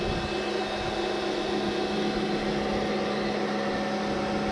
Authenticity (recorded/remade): recorded